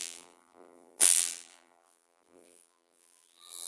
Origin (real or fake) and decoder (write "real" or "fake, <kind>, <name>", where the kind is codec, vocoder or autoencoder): fake, vocoder, BigVGAN v2